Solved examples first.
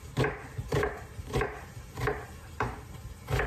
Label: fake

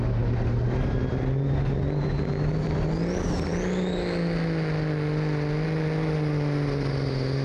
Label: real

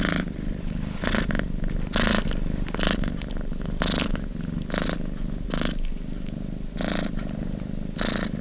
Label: real